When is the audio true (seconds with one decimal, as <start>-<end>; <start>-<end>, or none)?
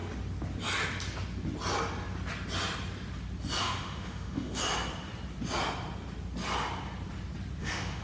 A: 0.0-3.6; 4.6-7.6